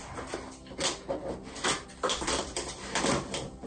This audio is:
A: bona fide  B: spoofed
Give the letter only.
A